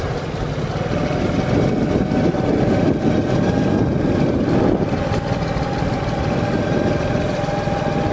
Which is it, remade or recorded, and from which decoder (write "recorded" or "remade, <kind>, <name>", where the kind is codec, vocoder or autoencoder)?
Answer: recorded